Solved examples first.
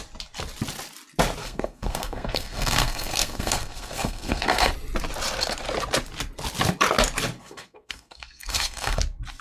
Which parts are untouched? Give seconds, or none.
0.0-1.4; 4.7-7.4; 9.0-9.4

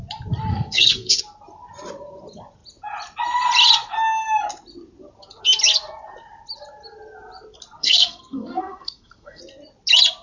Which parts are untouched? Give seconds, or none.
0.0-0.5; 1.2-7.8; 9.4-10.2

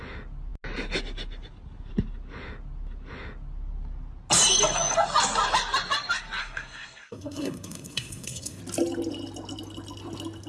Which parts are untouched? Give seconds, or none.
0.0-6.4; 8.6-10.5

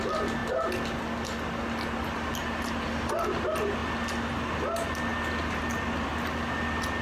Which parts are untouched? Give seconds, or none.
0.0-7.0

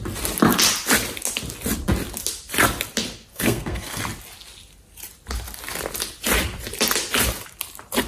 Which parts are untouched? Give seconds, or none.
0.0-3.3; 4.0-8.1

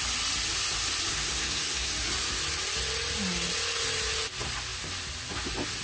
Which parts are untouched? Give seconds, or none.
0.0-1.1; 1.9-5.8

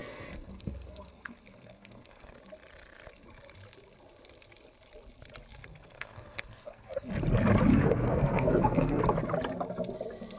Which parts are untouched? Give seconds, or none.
2.4-5.6; 7.1-7.7; 9.0-10.4

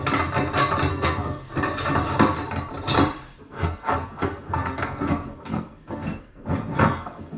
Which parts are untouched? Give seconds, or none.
0.0-0.9; 1.5-3.3